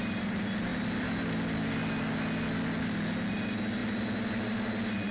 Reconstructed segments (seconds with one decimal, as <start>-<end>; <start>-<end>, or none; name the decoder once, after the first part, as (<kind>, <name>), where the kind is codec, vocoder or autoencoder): none